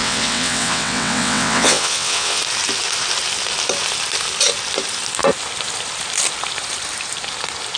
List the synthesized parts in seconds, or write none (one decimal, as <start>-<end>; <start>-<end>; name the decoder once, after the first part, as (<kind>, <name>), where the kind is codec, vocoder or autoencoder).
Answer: 0.0-2.4 (vocoder, WaveNeXt)